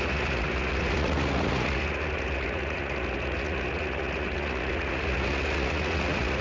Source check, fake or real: fake